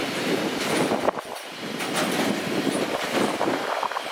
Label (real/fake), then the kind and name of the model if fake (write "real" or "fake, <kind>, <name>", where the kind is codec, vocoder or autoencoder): real